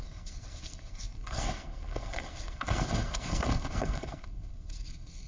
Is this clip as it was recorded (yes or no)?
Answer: no